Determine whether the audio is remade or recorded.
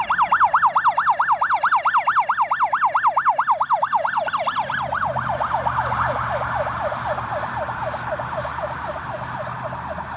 recorded